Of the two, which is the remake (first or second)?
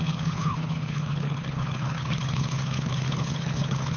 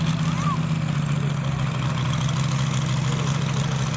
first